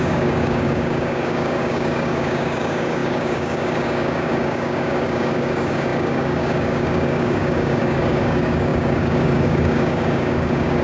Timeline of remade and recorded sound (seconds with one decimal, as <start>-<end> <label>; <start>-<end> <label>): 0.0-10.8 remade